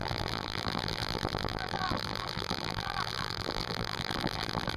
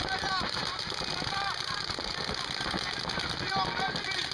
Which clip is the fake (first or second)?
first